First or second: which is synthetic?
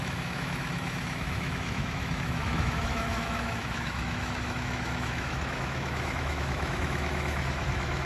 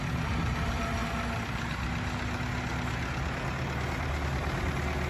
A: first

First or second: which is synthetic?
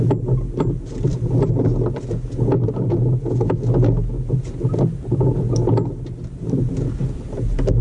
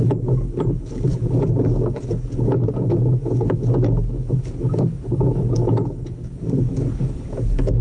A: second